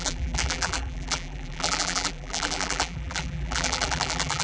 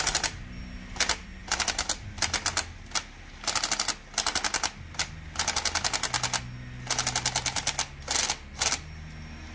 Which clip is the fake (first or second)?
first